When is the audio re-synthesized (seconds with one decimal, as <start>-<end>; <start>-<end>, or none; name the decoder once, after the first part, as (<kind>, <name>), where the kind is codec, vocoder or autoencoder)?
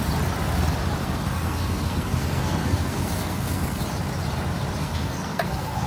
1.0-3.8 (codec, SNAC); 4.8-5.9